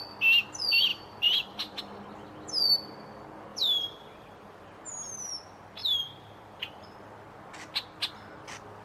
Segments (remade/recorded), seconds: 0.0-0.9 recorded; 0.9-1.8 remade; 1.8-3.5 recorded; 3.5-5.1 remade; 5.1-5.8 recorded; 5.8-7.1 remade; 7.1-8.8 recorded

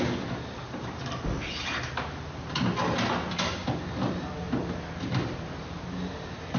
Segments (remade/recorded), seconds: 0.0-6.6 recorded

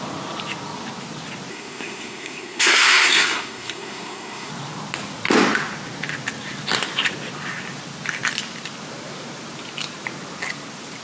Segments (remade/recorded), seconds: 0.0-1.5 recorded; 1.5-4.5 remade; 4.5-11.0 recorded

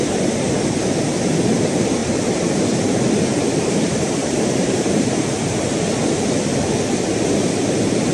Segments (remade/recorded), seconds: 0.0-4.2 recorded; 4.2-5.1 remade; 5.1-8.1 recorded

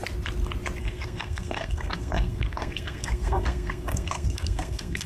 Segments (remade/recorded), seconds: 0.0-0.8 recorded; 0.8-5.1 remade

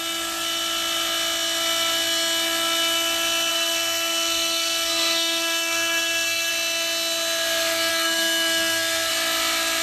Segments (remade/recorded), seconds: 0.0-3.5 recorded; 3.5-6.5 remade; 6.5-7.9 recorded; 7.9-9.1 remade; 9.1-9.8 recorded

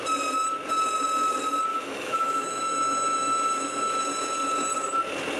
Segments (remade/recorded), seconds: 0.0-1.7 recorded; 1.7-4.0 remade; 4.0-5.4 recorded